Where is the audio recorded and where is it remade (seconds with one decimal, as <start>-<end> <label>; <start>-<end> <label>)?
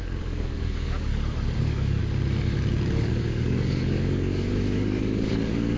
0.0-1.1 remade; 1.1-1.6 recorded; 1.6-2.0 remade; 2.0-3.1 recorded; 3.1-5.8 remade